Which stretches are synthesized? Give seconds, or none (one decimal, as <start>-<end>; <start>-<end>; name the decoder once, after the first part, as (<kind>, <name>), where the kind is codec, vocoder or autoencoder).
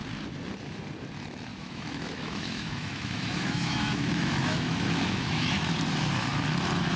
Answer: 1.5-5.7 (autoencoder, DAC-VAE)